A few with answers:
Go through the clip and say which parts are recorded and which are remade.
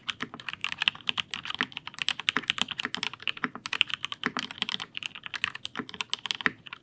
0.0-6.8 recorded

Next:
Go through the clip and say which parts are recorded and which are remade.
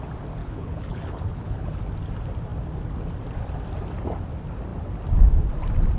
0.0-0.4 recorded; 0.4-1.8 remade; 1.8-6.0 recorded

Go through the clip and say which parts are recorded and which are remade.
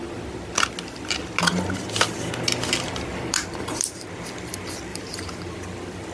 0.0-3.1 recorded; 3.1-3.9 remade; 3.9-4.9 recorded; 4.9-5.4 remade; 5.4-6.1 recorded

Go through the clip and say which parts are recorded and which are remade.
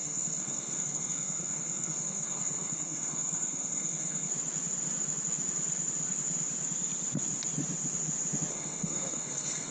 0.0-4.3 remade; 4.3-8.5 recorded; 8.5-9.7 remade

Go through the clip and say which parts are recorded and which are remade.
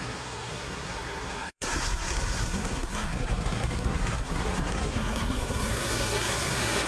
0.0-6.9 remade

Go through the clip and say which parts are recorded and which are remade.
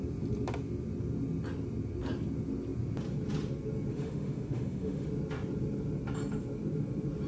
0.0-3.9 recorded; 3.9-5.1 remade; 5.1-7.3 recorded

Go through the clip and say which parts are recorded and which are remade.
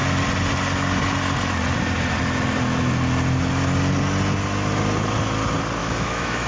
0.0-5.8 recorded; 5.8-6.5 remade